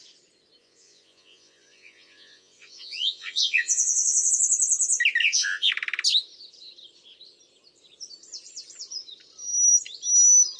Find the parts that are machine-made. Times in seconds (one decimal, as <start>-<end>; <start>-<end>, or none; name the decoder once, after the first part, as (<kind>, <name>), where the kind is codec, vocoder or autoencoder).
0.6-4.3 (vocoder, Vocos); 5.2-5.7